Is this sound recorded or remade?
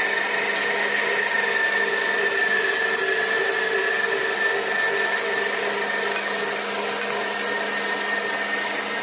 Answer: recorded